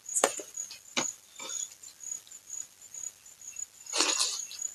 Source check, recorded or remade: recorded